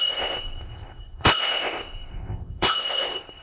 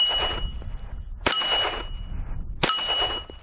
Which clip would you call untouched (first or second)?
second